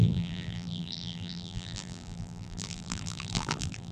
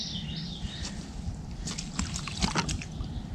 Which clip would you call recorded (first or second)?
second